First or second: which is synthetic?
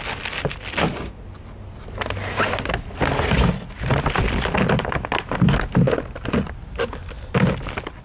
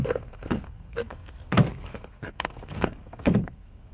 second